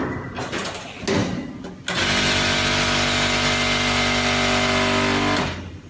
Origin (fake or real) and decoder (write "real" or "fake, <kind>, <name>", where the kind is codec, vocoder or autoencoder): real